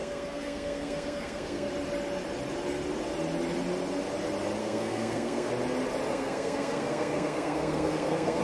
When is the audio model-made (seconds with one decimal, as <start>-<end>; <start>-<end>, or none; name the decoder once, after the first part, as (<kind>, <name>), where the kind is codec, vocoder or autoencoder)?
0.0-1.7 (codec, SNAC); 4.6-5.5; 6.1-8.4